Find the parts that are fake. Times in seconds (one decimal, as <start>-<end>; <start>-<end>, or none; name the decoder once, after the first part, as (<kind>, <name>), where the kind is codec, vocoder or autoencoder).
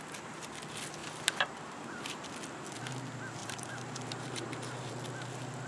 1.0-2.3 (vocoder, BigVGAN v2); 3.4-4.9